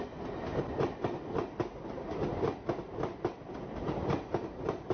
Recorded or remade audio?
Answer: recorded